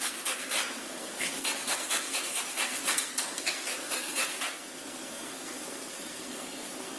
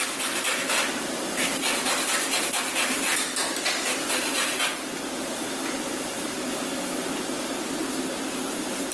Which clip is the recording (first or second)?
second